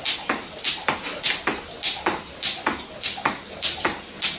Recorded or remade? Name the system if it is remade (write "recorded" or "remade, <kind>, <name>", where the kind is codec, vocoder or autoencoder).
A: recorded